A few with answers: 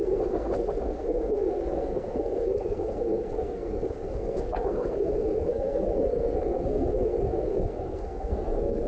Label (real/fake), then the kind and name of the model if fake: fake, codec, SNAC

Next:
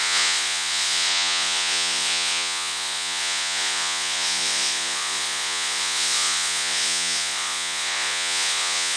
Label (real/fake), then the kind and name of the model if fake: fake, vocoder, Vocos